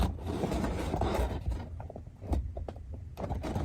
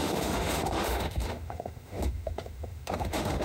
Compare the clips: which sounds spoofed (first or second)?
second